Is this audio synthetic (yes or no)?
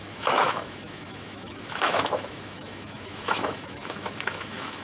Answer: yes